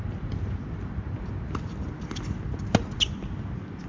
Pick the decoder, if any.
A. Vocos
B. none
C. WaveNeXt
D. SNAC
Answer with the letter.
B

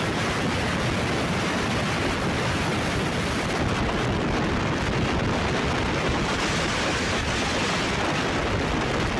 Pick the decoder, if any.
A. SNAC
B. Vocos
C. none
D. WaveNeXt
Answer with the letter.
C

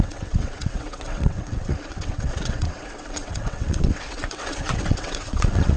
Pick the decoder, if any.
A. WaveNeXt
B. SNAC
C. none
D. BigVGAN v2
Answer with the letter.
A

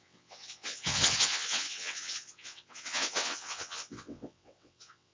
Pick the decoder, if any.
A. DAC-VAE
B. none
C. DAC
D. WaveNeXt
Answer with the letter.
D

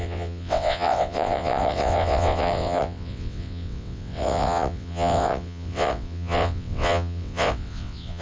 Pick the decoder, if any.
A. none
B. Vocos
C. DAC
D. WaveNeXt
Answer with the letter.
D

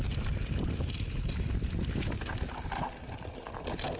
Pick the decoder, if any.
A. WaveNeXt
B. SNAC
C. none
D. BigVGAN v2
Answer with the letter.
C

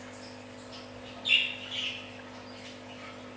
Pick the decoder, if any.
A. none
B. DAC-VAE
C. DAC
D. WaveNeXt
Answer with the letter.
A